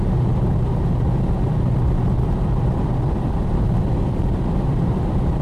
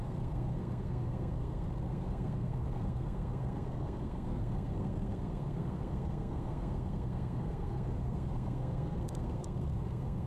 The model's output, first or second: second